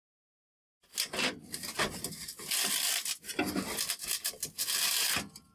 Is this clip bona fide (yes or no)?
yes